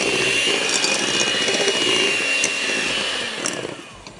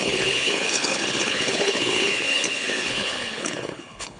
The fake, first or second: second